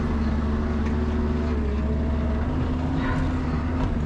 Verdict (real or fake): real